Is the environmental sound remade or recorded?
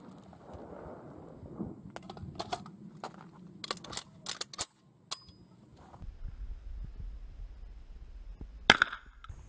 recorded